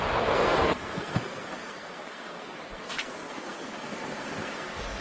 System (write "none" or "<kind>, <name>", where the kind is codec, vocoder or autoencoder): codec, SNAC